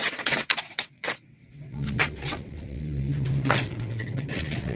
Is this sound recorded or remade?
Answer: remade